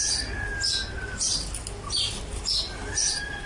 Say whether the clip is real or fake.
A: real